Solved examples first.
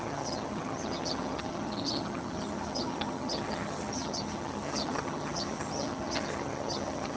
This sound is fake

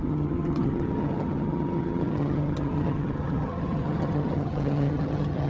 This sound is fake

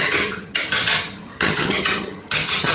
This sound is fake